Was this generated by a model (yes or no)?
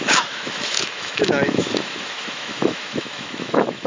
yes